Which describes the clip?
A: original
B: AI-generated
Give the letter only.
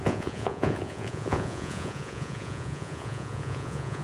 B